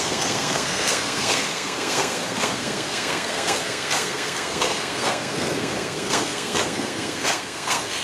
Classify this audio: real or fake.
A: fake